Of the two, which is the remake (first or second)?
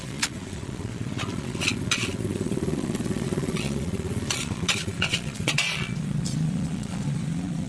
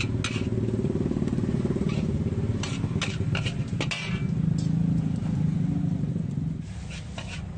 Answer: first